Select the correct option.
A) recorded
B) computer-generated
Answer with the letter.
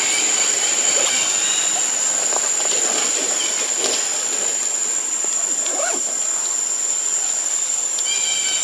A